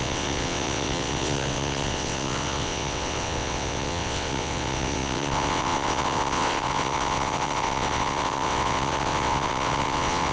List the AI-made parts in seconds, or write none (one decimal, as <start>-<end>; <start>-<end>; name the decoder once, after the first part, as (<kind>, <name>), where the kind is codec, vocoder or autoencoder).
0.0-10.3 (vocoder, WaveNeXt)